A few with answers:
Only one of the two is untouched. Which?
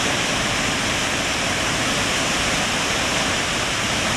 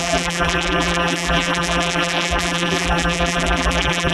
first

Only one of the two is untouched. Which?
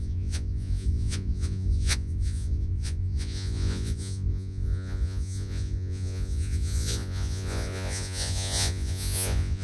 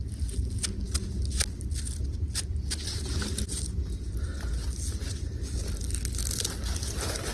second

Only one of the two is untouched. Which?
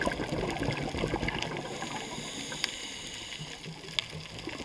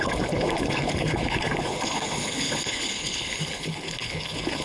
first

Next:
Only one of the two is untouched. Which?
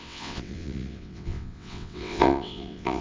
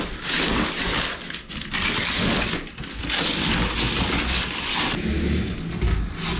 second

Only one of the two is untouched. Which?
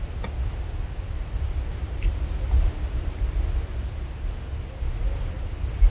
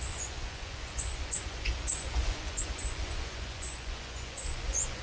first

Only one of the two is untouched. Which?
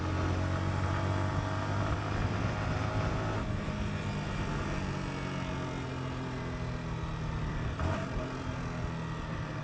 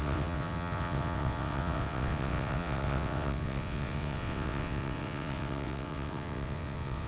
first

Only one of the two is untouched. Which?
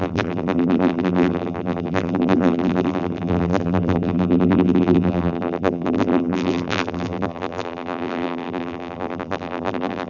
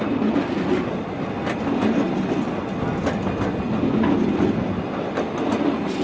second